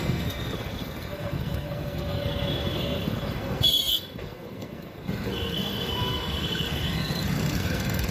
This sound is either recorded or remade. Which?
remade